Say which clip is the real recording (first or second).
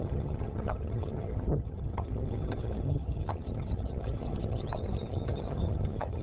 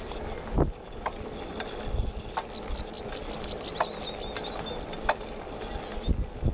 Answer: second